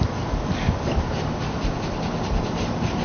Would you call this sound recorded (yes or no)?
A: yes